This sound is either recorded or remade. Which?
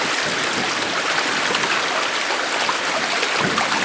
recorded